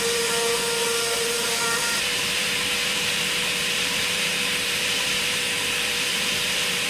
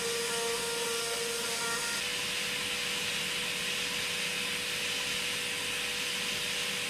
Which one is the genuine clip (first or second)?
second